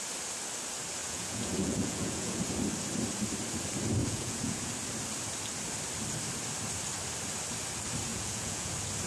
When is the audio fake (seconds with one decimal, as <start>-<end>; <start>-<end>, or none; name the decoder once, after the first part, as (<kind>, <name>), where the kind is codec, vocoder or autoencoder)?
1.0-2.4 (vocoder, Vocos); 4.0-4.7; 8.1-8.7